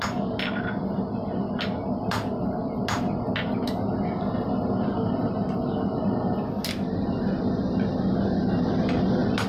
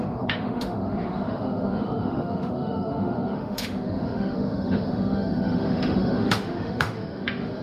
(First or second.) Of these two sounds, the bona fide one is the first